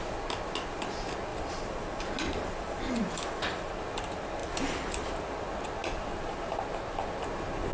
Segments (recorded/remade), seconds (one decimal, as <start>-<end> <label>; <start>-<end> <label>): 0.0-1.3 recorded; 1.3-3.7 remade; 3.7-4.4 recorded; 4.4-5.1 remade; 5.1-7.7 recorded